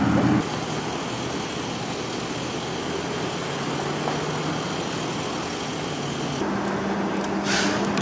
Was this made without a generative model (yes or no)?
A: yes